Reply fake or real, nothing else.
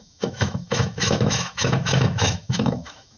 fake